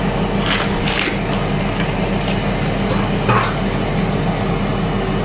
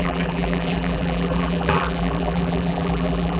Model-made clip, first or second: second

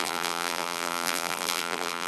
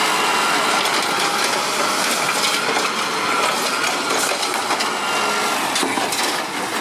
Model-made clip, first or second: first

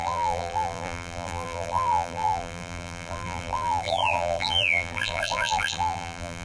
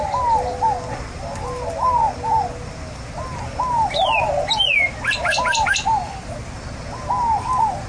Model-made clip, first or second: first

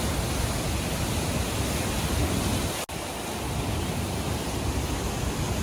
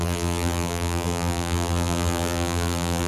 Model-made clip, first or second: second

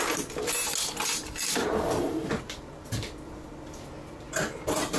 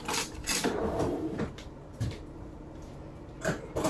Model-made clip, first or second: second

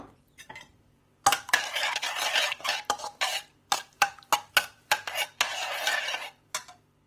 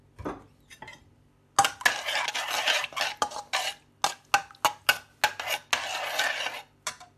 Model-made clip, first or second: first